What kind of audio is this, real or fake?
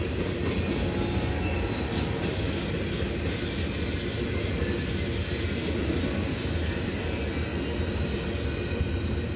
real